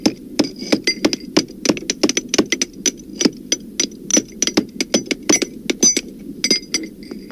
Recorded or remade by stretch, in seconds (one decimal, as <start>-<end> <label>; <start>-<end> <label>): 0.0-7.3 recorded